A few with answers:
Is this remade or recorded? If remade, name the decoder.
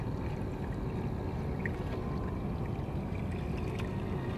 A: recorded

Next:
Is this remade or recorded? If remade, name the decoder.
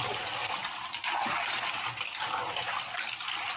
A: recorded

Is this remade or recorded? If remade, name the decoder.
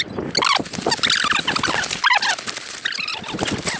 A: recorded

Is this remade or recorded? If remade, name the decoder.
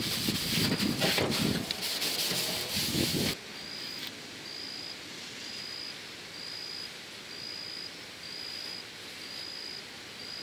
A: recorded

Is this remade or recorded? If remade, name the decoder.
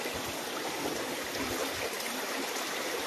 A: recorded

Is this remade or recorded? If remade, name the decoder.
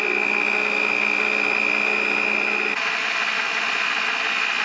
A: recorded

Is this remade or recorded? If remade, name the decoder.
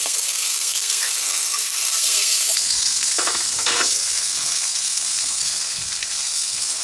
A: remade, codec, SNAC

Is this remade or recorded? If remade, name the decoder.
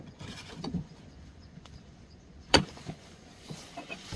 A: remade, vocoder, Vocos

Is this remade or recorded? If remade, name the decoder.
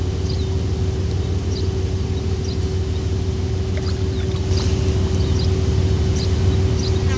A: recorded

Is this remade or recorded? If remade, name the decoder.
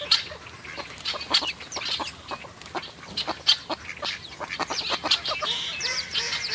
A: recorded